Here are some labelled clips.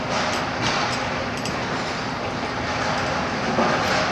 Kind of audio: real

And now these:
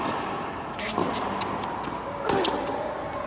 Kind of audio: real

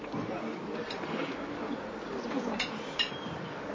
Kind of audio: real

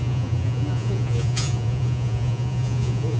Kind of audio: fake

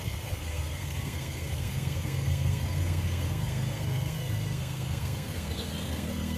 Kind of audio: fake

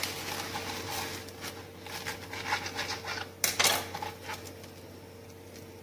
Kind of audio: real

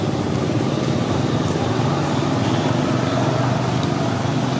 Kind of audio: real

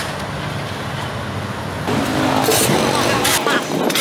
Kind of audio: real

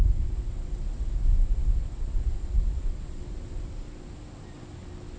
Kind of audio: real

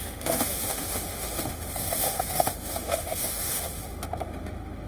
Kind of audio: fake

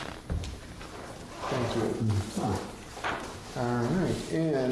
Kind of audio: real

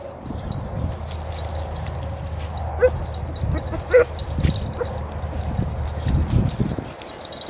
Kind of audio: real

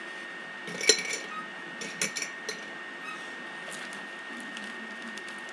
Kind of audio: real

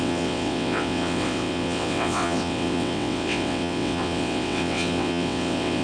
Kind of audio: fake